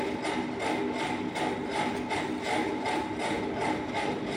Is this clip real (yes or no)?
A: yes